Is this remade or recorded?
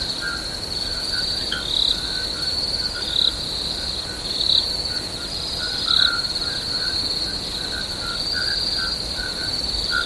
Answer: recorded